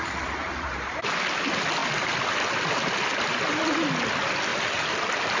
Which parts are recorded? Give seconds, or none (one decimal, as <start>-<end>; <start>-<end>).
0.0-0.4; 1.0-5.4